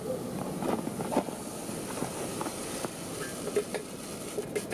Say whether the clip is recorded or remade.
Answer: recorded